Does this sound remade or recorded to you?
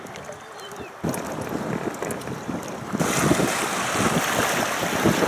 recorded